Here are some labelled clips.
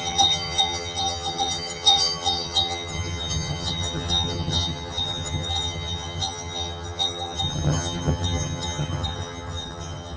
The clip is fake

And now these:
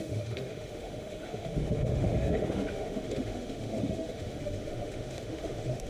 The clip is fake